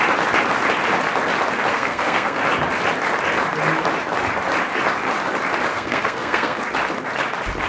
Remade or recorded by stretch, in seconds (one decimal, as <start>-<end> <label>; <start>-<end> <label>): 0.0-1.7 recorded; 1.7-2.4 remade; 2.4-5.7 recorded; 5.7-6.6 remade; 6.6-7.7 recorded